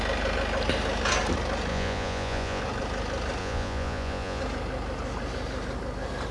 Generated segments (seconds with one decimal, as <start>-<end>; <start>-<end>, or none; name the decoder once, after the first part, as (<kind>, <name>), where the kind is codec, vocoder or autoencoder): 1.7-2.6 (vocoder, Vocos); 3.4-4.4